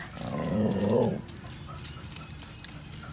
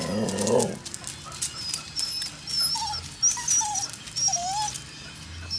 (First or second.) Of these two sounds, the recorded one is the second